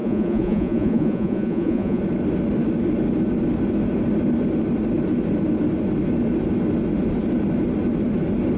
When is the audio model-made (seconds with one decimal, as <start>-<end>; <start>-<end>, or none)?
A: 0.0-2.0